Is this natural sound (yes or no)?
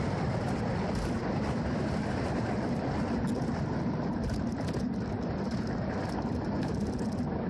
yes